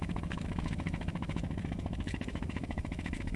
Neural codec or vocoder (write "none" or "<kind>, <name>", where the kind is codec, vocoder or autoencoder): autoencoder, DAC-VAE